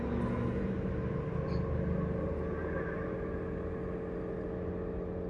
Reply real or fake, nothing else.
real